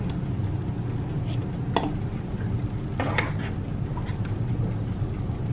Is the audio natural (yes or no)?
yes